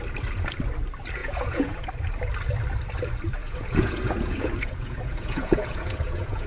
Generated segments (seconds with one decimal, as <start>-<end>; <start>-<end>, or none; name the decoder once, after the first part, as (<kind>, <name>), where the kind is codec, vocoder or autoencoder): 1.2-1.9 (vocoder, Vocos); 3.4-6.5